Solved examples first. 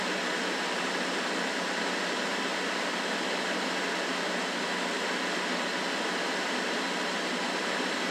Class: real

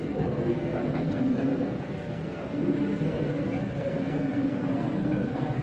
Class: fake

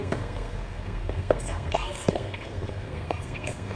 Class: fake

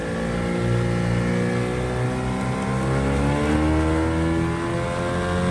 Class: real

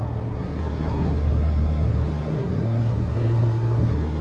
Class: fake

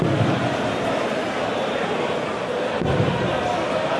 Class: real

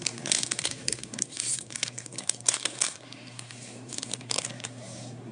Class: fake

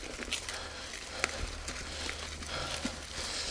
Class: real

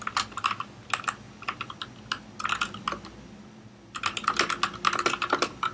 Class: real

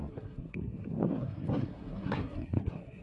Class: fake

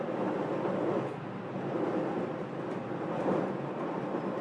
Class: real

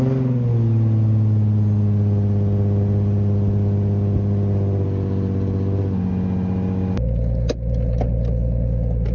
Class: real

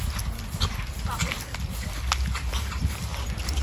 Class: real